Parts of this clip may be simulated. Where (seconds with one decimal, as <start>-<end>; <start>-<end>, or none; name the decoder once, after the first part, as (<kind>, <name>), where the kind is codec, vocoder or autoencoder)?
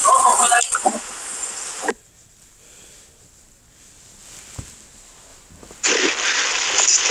3.8-5.3 (vocoder, BigVGAN v2); 5.9-7.1